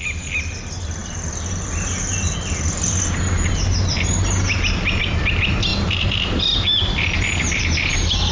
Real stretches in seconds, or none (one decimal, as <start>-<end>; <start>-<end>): 0.0-5.7; 7.6-8.3